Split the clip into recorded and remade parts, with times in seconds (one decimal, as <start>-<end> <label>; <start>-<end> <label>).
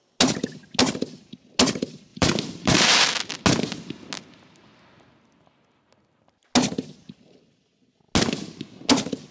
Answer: 0.0-2.1 recorded; 2.1-3.1 remade; 3.1-9.3 recorded